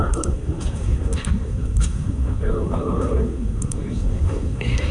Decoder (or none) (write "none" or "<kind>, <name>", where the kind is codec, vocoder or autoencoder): codec, SNAC